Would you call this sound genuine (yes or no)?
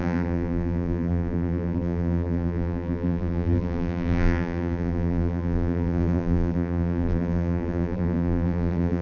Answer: no